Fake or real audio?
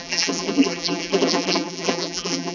fake